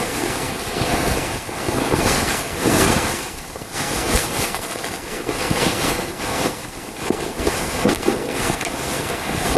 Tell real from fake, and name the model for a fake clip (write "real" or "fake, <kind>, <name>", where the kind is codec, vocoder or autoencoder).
fake, codec, SNAC